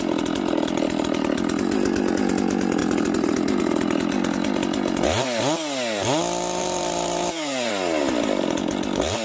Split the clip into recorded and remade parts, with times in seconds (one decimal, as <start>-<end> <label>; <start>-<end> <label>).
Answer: 0.0-2.8 recorded; 2.8-3.6 remade; 3.6-6.6 recorded; 6.6-7.7 remade; 7.7-9.2 recorded